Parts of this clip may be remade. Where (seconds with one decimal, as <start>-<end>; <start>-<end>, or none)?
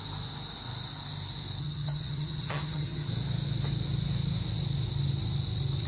1.6-3.1